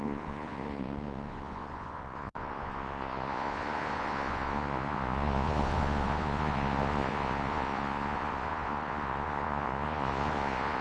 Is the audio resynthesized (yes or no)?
yes